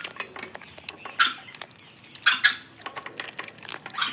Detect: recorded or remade recorded